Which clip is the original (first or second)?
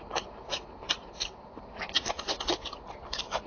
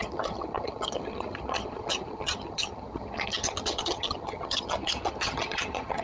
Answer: first